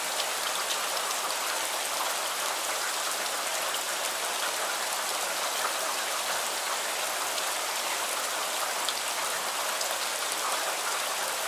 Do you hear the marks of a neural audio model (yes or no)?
no